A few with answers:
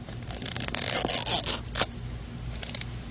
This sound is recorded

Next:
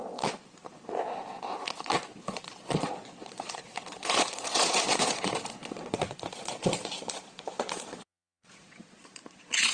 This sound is remade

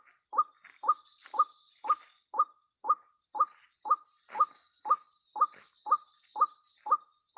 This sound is recorded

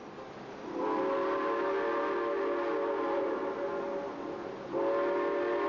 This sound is recorded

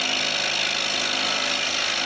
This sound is recorded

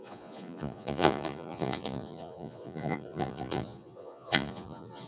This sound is remade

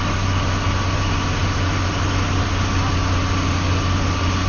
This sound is recorded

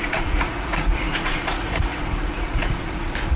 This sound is remade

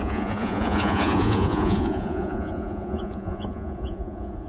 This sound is remade